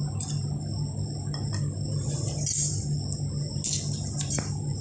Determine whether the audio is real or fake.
real